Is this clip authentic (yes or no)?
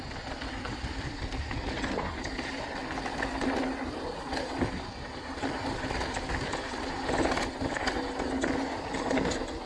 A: yes